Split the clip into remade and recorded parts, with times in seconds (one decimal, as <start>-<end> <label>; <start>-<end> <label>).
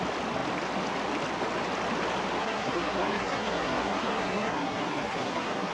0.0-2.4 recorded; 2.4-5.7 remade